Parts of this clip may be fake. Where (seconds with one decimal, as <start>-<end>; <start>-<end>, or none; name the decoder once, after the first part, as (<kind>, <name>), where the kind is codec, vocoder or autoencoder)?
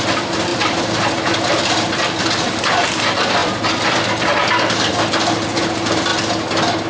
0.0-6.1 (vocoder, BigVGAN v2)